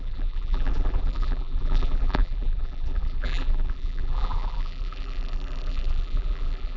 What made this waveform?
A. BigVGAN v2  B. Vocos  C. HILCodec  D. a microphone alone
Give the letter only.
A